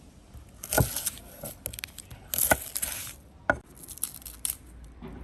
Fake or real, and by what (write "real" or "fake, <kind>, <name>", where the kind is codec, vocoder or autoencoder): real